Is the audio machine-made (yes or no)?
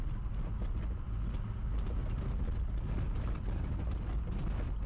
no